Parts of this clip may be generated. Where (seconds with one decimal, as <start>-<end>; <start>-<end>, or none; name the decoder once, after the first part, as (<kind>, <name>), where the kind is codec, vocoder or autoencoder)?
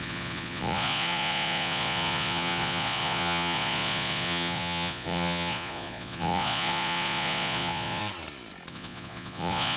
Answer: 0.0-8.0 (vocoder, Vocos); 8.7-9.8